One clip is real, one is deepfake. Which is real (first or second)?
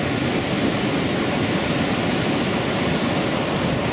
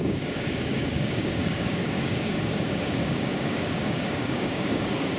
first